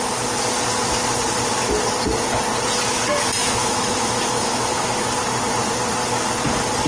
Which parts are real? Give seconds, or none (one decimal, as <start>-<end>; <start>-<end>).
0.0-3.4; 5.1-6.9